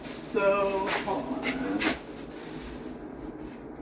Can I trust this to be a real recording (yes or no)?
yes